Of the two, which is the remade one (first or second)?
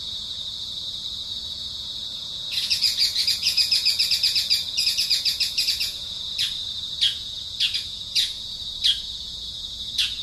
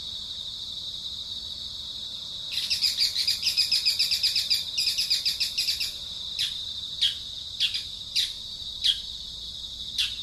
first